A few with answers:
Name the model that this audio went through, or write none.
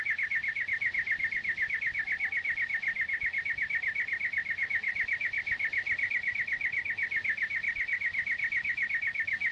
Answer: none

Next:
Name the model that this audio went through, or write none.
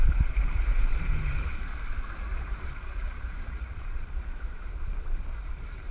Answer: vocoder, BigVGAN v2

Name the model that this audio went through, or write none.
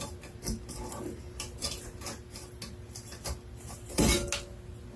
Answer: none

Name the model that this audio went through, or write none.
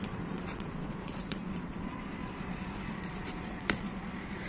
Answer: vocoder, Vocos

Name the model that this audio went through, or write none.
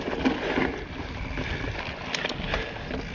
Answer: none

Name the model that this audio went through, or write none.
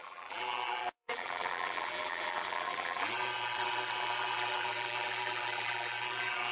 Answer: vocoder, BigVGAN v2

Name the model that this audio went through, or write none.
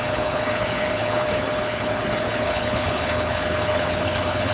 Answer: codec, HILCodec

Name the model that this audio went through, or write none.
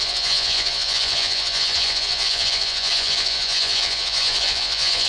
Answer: vocoder, Vocos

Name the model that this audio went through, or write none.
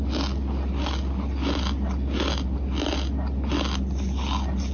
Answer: none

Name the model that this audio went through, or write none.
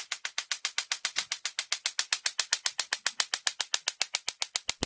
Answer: none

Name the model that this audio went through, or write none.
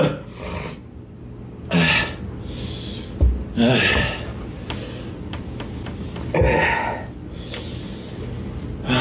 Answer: none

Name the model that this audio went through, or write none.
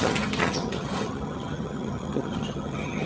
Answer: vocoder, HiFi-GAN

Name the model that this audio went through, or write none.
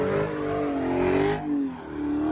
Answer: none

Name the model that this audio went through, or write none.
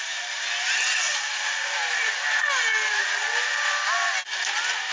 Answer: none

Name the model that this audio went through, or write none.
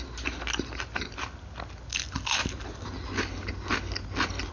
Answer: none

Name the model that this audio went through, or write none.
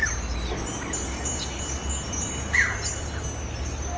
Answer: none